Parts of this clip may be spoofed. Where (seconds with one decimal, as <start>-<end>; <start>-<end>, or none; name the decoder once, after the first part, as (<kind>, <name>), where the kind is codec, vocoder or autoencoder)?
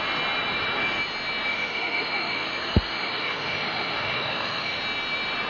1.5-4.8 (autoencoder, DAC-VAE)